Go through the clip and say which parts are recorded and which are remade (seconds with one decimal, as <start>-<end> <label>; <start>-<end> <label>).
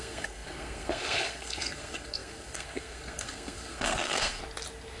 0.0-4.4 remade; 4.4-5.0 recorded